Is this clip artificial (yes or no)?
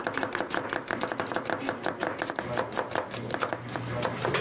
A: no